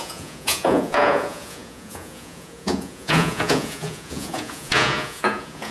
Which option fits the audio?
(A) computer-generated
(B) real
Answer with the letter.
A